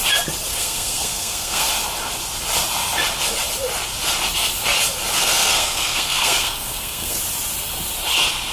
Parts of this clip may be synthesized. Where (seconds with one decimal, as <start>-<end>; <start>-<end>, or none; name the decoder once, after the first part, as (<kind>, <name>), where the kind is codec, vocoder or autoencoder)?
0.5-1.7 (codec, SNAC); 5.2-7.2